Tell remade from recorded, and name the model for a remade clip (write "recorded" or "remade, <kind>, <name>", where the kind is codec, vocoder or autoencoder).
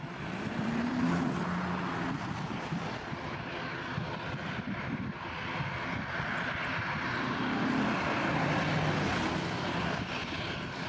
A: remade, vocoder, BigVGAN v2